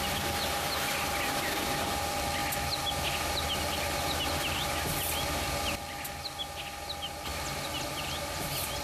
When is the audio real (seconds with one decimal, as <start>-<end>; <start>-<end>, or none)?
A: 0.0-8.8